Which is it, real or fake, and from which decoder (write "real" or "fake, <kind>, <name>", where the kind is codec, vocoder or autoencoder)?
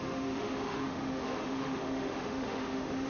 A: fake, autoencoder, DAC-VAE